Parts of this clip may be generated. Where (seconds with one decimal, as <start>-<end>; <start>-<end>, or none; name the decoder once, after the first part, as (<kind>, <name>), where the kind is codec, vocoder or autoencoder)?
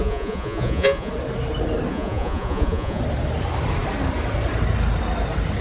0.0-1.1 (vocoder, Vocos); 1.9-3.0